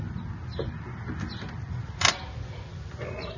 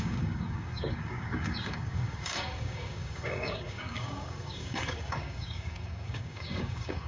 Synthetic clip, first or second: second